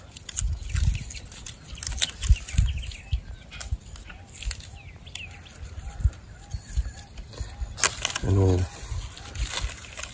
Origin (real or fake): real